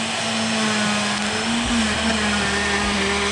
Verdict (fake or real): real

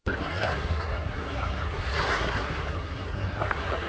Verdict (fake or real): fake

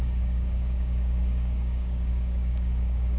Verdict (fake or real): fake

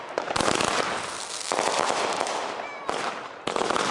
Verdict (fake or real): real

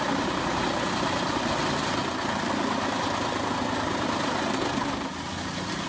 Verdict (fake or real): real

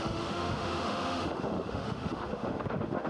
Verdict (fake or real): fake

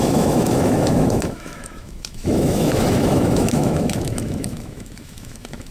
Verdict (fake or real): fake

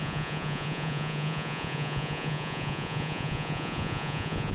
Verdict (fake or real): fake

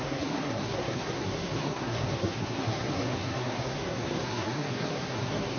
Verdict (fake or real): fake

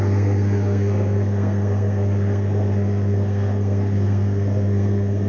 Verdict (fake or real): fake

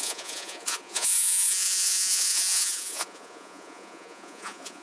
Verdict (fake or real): fake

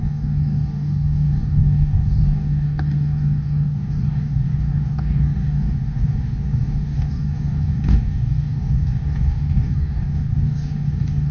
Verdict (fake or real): fake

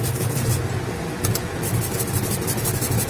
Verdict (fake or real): real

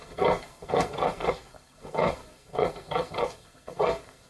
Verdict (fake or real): fake